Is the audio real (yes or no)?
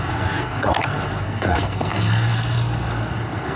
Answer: no